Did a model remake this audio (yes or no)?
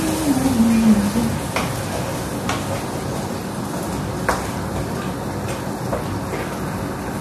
no